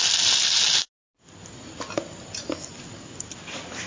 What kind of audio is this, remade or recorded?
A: recorded